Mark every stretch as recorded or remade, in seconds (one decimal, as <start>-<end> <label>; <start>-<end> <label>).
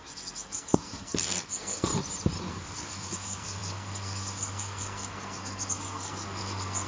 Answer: 0.0-1.9 remade; 1.9-2.5 recorded; 2.5-6.9 remade